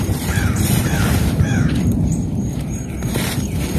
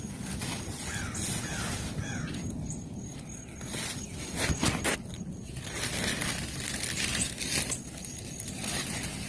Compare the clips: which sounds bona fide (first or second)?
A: second